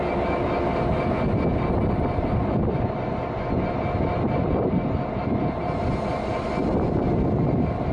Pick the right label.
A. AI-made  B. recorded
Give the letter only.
B